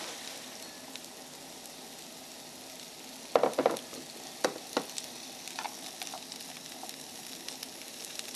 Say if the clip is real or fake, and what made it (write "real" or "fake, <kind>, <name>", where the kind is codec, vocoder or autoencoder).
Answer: real